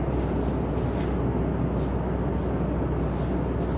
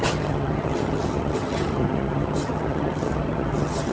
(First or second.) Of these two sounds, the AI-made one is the second